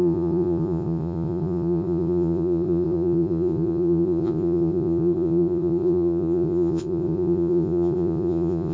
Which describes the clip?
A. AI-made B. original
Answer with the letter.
A